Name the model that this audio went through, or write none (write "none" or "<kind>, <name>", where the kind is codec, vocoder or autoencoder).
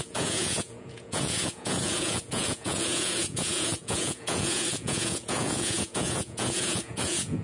vocoder, Vocos